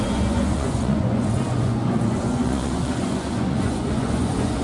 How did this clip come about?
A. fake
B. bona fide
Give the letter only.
A